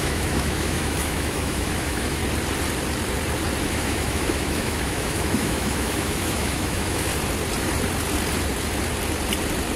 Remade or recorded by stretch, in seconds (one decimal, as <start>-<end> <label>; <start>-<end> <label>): 0.0-2.2 remade; 2.2-3.6 recorded; 3.6-7.1 remade; 7.1-9.8 recorded